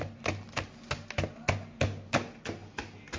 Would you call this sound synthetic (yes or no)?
no